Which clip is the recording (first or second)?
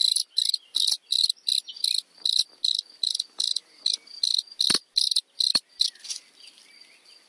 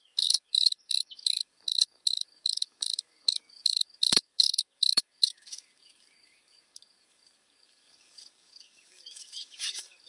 first